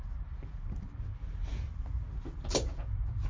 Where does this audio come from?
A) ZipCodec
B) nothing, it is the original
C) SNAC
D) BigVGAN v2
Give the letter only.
B